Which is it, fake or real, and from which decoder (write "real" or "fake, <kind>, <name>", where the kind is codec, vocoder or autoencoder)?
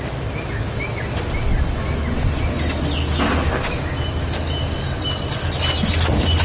real